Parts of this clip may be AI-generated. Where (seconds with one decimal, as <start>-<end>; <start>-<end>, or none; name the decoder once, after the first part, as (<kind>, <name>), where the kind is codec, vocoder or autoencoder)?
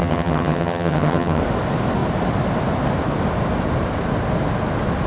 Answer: 0.0-1.4 (vocoder, HiFi-GAN)